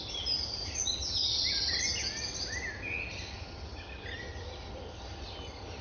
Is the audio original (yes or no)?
yes